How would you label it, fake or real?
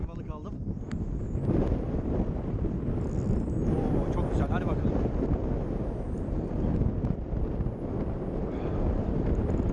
real